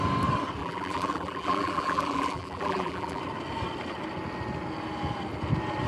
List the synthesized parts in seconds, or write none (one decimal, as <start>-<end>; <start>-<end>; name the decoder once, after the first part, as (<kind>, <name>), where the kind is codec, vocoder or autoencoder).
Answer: 0.6-3.2 (vocoder, BigVGAN v2)